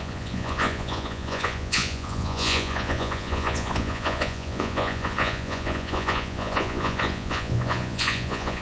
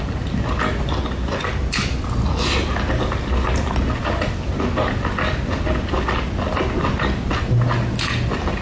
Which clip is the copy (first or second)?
first